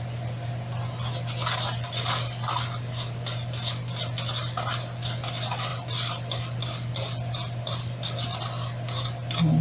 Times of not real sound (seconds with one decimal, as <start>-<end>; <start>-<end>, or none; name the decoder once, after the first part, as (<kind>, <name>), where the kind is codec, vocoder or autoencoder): none